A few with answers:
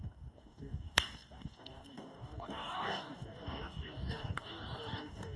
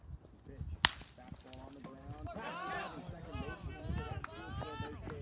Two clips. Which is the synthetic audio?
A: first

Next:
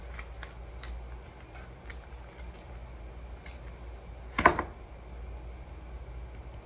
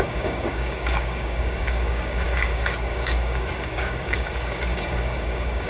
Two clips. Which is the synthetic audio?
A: second